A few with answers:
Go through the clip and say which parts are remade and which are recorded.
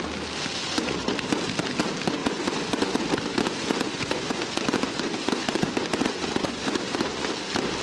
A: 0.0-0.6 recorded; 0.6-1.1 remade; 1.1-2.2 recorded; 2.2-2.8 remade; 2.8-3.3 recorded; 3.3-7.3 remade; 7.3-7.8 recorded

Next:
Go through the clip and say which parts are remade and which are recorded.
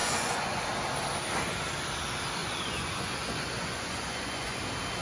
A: 0.0-0.6 remade; 0.6-2.4 recorded; 2.4-4.6 remade; 4.6-5.0 recorded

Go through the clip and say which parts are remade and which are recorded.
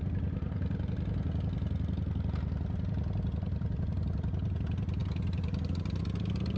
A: 0.0-6.6 recorded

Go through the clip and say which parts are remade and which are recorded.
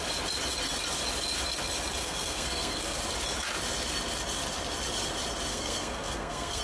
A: 0.0-2.0 recorded; 2.0-3.0 remade; 3.0-5.5 recorded; 5.5-6.6 remade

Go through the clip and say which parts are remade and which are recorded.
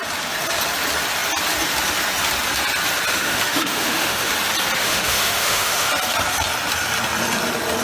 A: 0.0-3.1 recorded; 3.1-4.3 remade; 4.3-4.8 recorded; 4.8-5.9 remade; 5.9-7.8 recorded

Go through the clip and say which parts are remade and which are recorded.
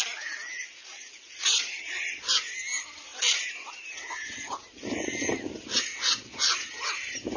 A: 0.0-7.4 recorded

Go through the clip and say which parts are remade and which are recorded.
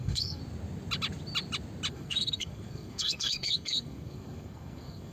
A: 0.0-0.4 remade; 0.4-1.9 recorded; 1.9-5.1 remade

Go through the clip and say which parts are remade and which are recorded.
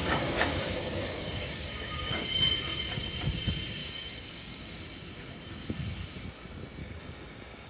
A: 0.0-2.5 remade; 2.5-3.8 recorded; 3.8-4.8 remade; 4.8-6.8 recorded; 6.8-7.7 remade